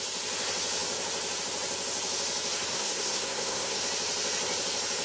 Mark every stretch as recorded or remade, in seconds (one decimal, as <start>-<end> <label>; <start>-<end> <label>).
0.0-2.7 recorded; 2.7-3.8 remade; 3.8-5.0 recorded